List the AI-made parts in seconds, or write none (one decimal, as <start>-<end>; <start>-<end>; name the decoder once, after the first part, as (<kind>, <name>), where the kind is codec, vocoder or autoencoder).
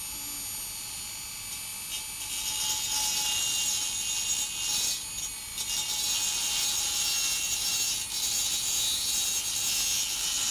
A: none